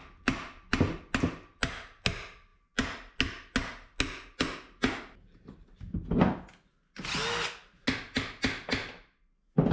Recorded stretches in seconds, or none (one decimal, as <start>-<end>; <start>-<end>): 0.0-9.7